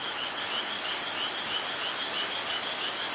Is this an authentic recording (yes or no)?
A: yes